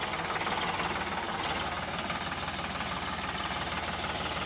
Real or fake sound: real